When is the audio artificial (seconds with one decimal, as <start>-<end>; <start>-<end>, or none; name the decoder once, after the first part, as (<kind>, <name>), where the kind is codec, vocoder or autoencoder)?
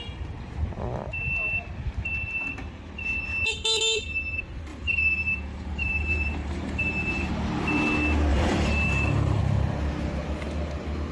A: 4.7-7.3 (vocoder, BigVGAN v2); 8.3-9.4